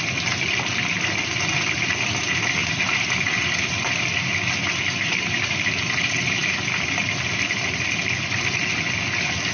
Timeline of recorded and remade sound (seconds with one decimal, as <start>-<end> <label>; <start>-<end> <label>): 0.0-9.5 recorded